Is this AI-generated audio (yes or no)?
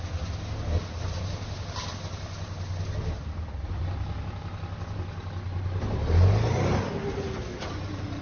no